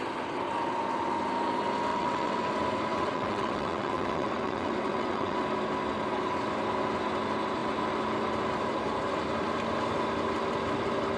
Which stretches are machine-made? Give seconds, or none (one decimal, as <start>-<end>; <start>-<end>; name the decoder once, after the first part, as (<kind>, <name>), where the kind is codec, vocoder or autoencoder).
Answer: 1.9-2.5 (vocoder, WaveNeXt); 2.9-5.4